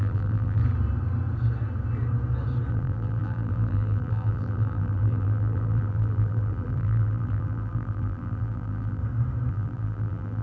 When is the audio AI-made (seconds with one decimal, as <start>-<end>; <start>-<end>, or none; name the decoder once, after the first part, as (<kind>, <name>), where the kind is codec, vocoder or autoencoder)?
0.0-0.6 (vocoder, BigVGAN v2); 2.7-9.0; 9.5-10.4